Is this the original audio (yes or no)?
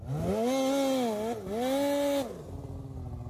yes